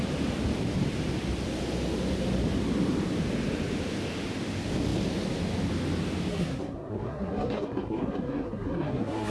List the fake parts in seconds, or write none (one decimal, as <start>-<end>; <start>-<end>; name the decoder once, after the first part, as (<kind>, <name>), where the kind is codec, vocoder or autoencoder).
6.3-9.3 (codec, SNAC)